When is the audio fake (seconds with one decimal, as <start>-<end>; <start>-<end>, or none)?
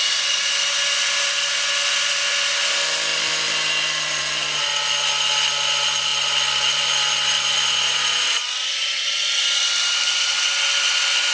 none